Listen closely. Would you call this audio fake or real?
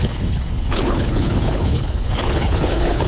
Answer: fake